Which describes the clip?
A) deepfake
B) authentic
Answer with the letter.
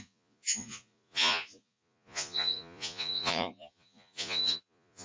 A